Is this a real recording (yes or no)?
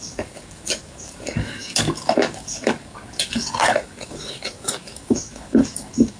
no